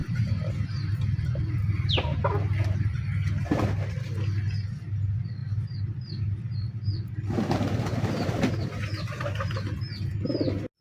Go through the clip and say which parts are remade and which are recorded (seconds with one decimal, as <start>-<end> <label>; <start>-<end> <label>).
0.0-0.5 remade; 0.5-7.9 recorded; 7.9-8.5 remade; 8.5-10.8 recorded